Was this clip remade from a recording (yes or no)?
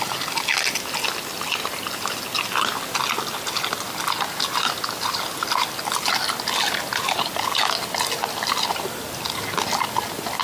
no